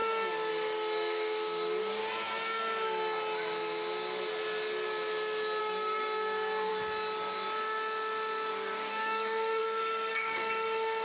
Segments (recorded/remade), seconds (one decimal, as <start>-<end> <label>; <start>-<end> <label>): 0.0-0.5 recorded; 0.5-2.0 remade; 2.0-5.6 recorded; 5.6-6.7 remade; 6.7-8.5 recorded; 8.5-11.0 remade